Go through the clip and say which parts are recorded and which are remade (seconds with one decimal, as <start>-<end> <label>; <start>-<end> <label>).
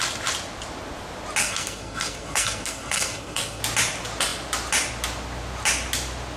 0.0-1.4 recorded; 1.4-3.6 remade; 3.6-6.4 recorded